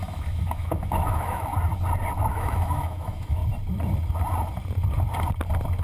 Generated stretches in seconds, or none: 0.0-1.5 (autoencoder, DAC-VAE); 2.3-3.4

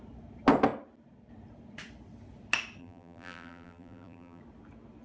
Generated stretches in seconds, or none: 2.8-4.4 (vocoder, BigVGAN v2)